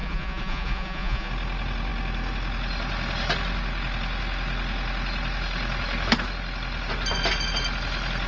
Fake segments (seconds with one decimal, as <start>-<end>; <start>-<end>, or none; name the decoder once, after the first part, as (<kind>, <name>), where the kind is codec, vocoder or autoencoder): 0.0-1.3 (vocoder, Vocos)

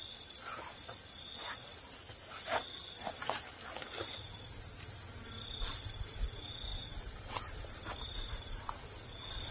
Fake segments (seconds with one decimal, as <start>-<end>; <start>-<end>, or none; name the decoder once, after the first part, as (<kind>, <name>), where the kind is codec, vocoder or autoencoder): 6.7-8.8 (vocoder, BigVGAN v2)

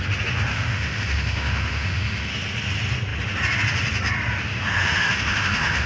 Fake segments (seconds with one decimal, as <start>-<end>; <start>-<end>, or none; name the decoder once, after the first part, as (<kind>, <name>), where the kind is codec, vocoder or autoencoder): 0.5-2.3 (autoencoder, DAC-VAE); 4.5-5.9

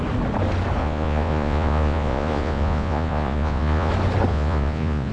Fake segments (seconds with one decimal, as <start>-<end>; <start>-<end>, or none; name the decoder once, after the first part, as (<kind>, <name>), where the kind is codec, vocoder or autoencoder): 0.8-3.9 (vocoder, Vocos); 4.3-5.1

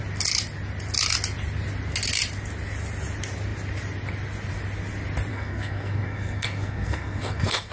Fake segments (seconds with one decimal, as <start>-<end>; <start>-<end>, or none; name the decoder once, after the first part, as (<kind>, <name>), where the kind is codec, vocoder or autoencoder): 5.3-7.7 (codec, SNAC)

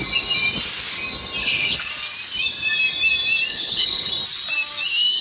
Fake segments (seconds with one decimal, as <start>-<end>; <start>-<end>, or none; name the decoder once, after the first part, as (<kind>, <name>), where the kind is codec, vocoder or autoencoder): 1.4-1.9 (codec, HILCodec); 3.5-4.1

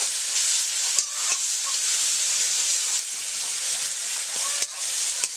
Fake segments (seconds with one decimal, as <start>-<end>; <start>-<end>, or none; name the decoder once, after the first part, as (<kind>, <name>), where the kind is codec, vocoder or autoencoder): 1.6-2.3 (vocoder, BigVGAN v2)

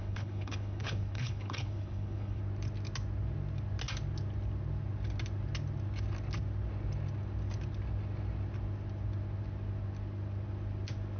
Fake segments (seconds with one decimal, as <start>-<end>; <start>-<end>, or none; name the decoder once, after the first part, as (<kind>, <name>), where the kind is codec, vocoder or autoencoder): 0.0-2.4 (codec, HILCodec)